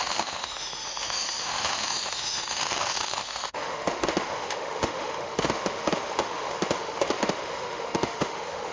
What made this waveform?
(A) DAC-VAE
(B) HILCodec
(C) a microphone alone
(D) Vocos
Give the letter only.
A